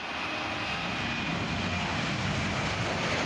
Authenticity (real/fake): real